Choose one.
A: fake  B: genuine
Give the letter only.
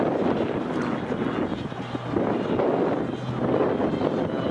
B